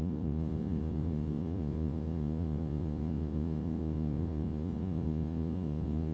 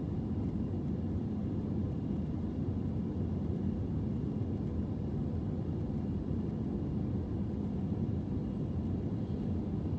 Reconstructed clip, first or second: first